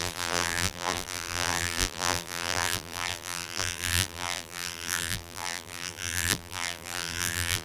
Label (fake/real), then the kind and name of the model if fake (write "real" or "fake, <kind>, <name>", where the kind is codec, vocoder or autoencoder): fake, vocoder, BigVGAN v2